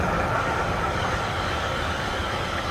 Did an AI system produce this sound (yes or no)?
yes